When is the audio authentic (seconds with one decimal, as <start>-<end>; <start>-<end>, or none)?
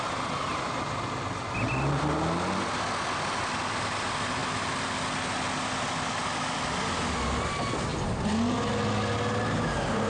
0.0-10.1